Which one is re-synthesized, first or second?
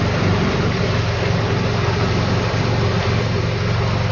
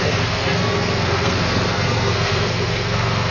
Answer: second